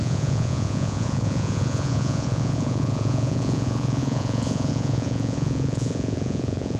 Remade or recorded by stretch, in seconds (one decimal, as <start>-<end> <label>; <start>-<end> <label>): 0.0-6.8 remade